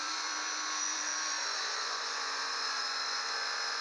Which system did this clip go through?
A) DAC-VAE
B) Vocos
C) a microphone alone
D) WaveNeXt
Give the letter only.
B